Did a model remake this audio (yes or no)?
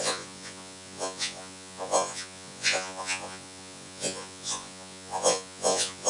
yes